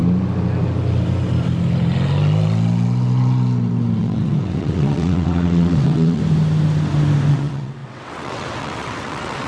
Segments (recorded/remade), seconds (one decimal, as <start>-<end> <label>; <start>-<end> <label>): 0.0-4.0 recorded; 4.0-6.2 remade; 6.2-7.3 recorded; 7.3-9.5 remade